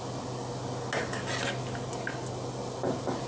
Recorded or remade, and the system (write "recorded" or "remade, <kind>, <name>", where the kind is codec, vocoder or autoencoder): recorded